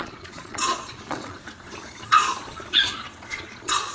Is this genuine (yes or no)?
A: no